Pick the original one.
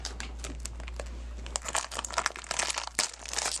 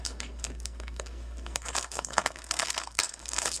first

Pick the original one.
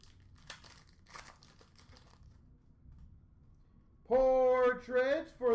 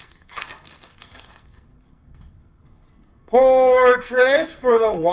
first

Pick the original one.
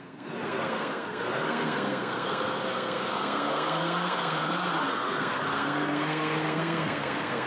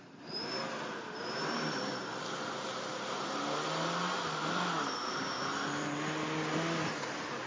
second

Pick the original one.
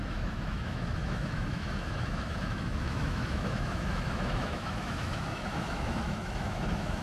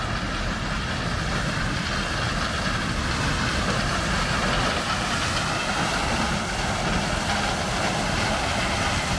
second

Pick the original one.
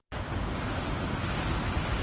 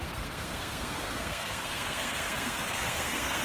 first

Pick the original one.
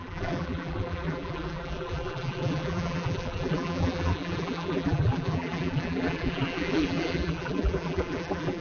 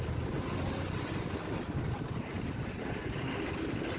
second